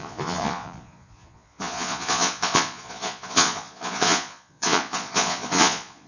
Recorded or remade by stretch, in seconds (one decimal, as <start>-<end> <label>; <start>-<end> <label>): 0.0-6.1 remade